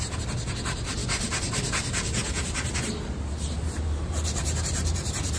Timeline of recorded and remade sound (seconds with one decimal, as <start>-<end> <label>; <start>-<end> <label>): 0.0-5.4 recorded